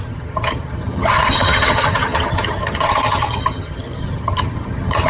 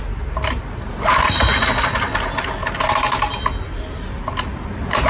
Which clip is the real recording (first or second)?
second